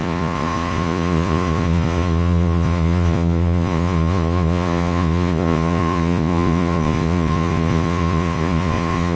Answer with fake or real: fake